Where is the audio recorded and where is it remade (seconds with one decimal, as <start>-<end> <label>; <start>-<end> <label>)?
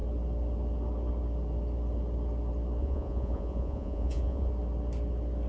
0.0-2.8 recorded; 2.8-4.5 remade; 4.5-5.5 recorded